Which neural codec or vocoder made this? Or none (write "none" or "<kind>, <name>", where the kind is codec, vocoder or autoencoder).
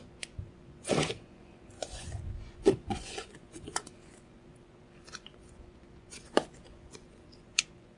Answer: vocoder, Vocos